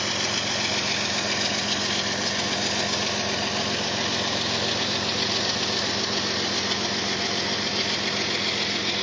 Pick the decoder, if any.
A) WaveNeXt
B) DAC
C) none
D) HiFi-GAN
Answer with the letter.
C